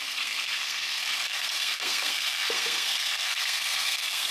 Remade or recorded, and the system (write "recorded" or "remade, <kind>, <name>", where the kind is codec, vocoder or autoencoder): remade, codec, SNAC